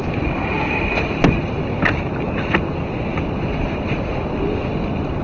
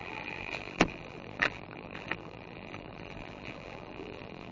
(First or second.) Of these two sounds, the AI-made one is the second